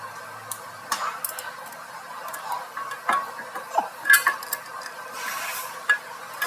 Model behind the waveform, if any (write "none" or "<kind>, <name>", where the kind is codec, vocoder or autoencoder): none